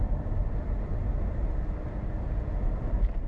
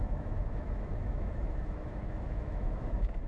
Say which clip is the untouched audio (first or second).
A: first